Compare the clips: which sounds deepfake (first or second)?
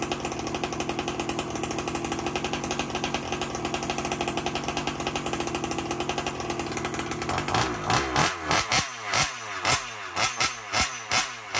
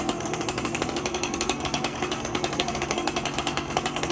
second